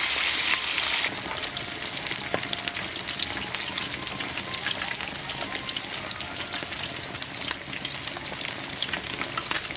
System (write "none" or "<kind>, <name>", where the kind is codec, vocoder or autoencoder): none